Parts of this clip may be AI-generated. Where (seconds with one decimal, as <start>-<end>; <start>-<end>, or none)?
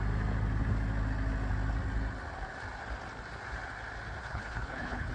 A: 4.2-5.1